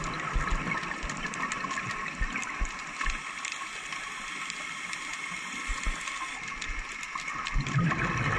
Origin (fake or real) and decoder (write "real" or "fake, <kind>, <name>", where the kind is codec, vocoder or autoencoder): real